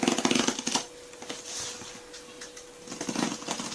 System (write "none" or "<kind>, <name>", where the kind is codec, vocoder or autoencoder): none